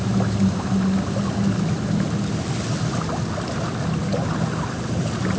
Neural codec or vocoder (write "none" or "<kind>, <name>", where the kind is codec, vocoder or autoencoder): none